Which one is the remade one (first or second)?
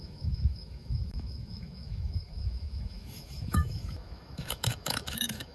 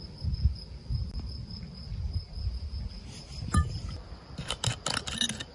first